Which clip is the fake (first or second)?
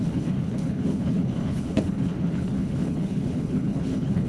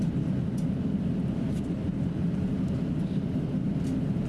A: first